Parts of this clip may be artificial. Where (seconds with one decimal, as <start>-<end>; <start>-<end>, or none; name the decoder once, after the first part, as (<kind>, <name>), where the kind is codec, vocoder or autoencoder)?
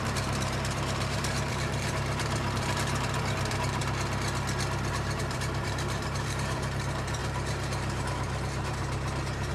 0.0-3.8 (vocoder, BigVGAN v2); 4.9-9.5